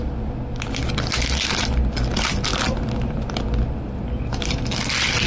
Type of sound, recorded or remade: recorded